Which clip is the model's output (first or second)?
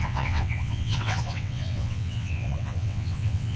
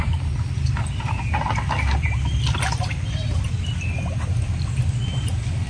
first